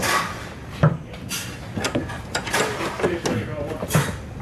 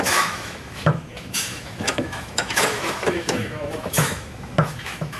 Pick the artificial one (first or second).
second